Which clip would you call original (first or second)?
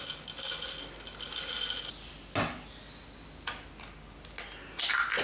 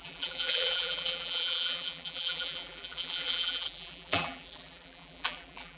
first